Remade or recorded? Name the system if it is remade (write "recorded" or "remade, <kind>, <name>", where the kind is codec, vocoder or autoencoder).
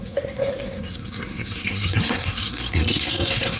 remade, codec, SNAC